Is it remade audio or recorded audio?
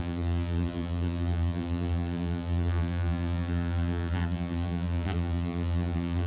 remade